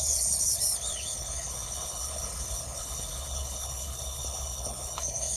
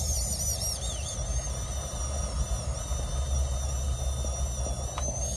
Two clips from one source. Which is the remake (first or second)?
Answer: first